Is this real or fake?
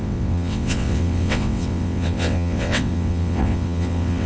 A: fake